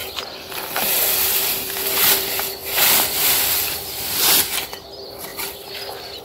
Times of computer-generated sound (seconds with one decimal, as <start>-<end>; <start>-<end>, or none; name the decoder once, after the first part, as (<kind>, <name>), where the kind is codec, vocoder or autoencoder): 0.0-0.8 (vocoder, BigVGAN v2); 2.6-4.4